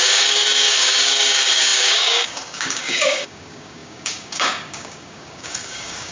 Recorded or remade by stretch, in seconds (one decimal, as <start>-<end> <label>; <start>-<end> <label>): 0.0-6.1 remade